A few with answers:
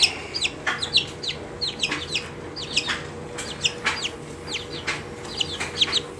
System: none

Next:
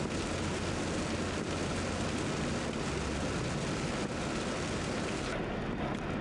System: none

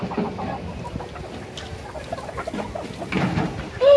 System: none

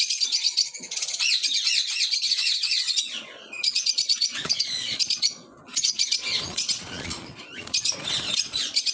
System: vocoder, Vocos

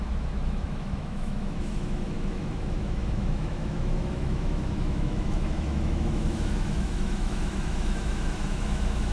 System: autoencoder, DAC-VAE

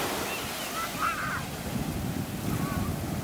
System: none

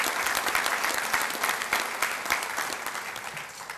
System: none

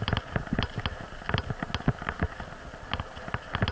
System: none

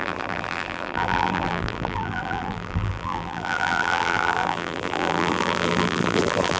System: vocoder, BigVGAN v2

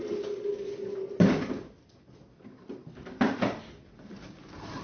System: none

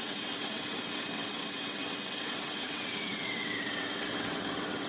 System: vocoder, WaveNeXt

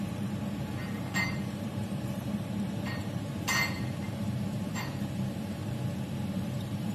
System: vocoder, BigVGAN v2